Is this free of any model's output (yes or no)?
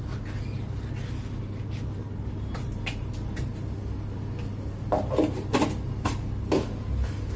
yes